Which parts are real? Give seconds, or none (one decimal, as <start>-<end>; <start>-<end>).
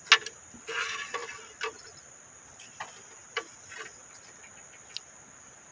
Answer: 0.0-5.7